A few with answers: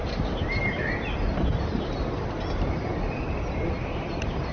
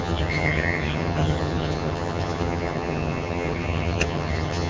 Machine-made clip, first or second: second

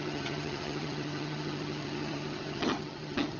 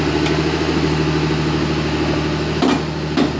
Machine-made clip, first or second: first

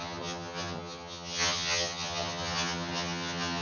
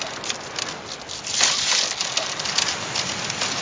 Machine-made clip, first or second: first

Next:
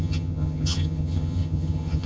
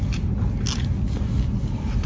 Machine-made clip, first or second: first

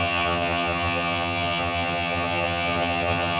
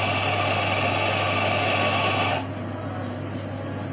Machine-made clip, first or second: first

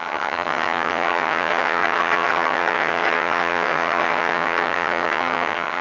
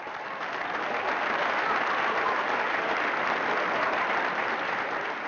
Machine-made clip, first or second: first